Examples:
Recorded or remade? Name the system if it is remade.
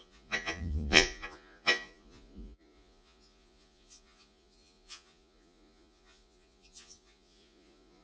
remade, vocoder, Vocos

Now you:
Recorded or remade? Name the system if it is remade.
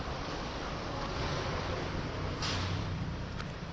remade, vocoder, BigVGAN v2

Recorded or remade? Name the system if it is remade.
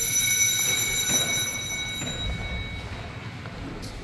recorded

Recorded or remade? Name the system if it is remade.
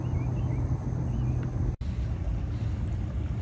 recorded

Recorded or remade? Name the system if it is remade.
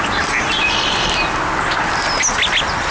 recorded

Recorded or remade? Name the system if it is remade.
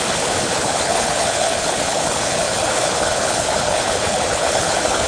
remade, codec, HILCodec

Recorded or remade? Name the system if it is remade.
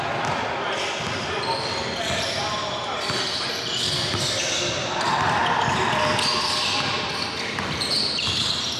recorded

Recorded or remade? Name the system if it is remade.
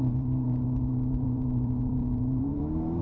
remade, vocoder, BigVGAN v2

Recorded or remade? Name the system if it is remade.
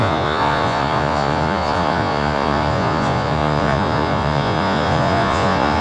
remade, vocoder, Vocos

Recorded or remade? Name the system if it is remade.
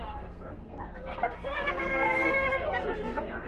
remade, codec, SNAC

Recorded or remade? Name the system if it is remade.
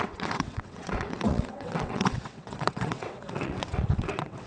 remade, vocoder, WaveNeXt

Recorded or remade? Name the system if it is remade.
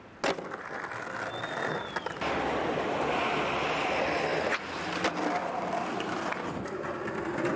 recorded